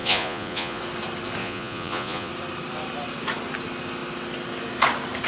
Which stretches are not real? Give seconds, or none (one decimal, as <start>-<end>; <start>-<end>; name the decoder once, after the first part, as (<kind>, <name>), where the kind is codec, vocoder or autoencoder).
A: 0.0-0.8 (vocoder, Vocos); 1.4-2.3